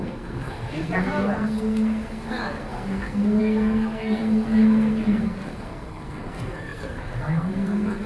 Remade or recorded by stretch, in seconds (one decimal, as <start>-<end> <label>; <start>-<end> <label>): 0.0-8.1 remade